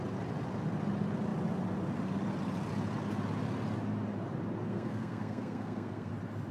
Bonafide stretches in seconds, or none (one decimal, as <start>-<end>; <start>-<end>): 0.0-4.7; 6.1-6.5